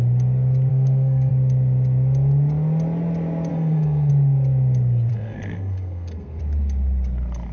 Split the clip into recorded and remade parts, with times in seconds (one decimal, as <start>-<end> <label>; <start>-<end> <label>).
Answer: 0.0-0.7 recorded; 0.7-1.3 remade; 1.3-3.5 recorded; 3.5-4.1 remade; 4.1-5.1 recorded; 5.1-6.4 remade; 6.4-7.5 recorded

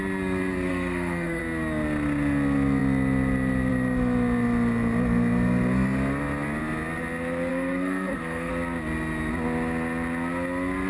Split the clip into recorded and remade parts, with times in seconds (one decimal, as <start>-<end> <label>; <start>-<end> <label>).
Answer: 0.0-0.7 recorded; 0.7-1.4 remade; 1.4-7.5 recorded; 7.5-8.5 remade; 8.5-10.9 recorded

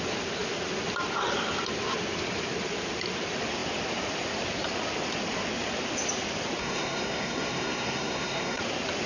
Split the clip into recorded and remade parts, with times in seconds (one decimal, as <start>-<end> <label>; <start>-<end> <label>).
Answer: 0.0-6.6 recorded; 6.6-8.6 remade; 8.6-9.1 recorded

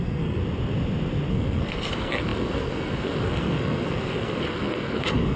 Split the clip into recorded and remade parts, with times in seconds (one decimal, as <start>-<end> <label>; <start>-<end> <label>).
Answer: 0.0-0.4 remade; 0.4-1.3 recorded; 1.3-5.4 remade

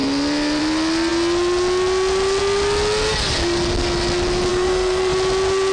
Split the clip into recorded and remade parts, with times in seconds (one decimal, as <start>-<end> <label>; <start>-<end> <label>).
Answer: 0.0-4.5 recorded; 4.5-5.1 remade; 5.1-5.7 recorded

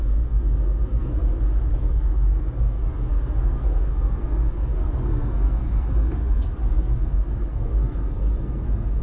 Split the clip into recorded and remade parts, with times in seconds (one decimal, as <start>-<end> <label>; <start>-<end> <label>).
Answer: 0.0-1.2 remade; 1.2-1.8 recorded; 1.8-9.0 remade